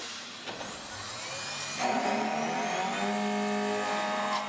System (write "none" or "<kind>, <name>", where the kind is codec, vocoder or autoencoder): none